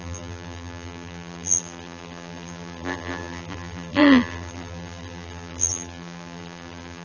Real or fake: fake